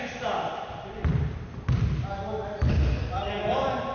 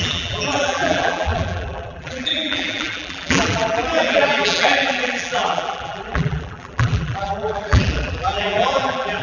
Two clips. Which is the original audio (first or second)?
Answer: first